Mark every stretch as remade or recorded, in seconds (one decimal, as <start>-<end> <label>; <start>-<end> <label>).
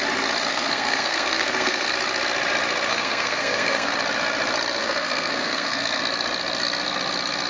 0.0-0.5 recorded; 0.5-1.9 remade; 1.9-2.9 recorded; 2.9-3.9 remade; 3.9-4.8 recorded; 4.8-6.0 remade; 6.0-7.5 recorded